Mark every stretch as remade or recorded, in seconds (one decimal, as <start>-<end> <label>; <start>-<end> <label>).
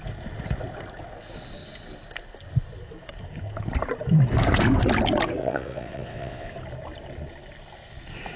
0.0-5.4 recorded; 5.4-6.5 remade; 6.5-8.4 recorded